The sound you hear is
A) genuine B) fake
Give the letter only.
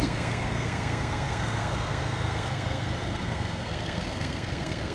B